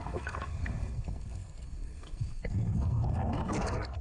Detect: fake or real fake